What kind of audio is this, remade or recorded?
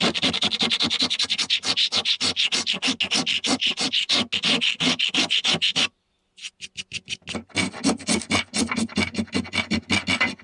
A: recorded